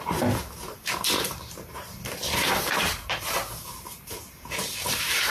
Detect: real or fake fake